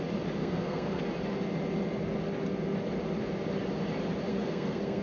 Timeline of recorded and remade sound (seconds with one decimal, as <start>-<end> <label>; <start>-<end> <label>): 0.0-0.4 recorded; 0.4-1.0 remade; 1.0-4.3 recorded; 4.3-5.0 remade